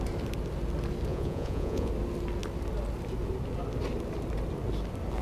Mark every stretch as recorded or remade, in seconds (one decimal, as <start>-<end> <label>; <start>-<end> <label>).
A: 0.0-1.1 recorded; 1.1-1.9 remade; 1.9-5.2 recorded